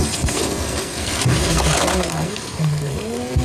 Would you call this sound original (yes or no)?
no